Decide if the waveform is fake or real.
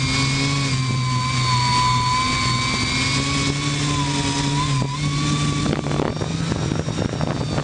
real